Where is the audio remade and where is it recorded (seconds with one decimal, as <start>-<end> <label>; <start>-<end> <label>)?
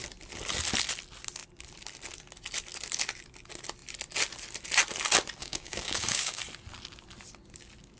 0.0-5.4 recorded; 5.4-6.4 remade; 6.4-8.0 recorded